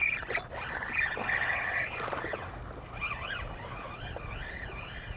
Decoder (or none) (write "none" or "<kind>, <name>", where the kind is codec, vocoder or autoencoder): none